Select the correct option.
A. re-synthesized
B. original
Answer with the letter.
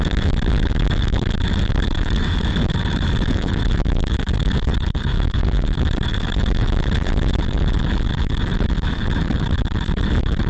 A